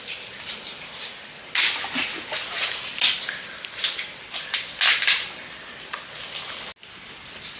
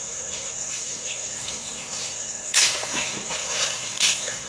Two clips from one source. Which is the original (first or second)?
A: first